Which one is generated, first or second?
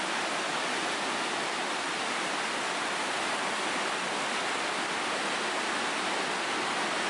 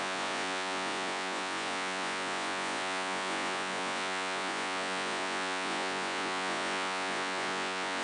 second